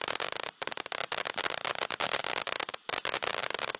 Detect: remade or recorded recorded